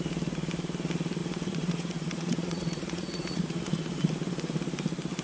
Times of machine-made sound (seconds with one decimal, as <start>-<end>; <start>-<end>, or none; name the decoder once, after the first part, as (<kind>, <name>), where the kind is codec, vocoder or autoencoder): 1.2-3.8 (vocoder, Vocos)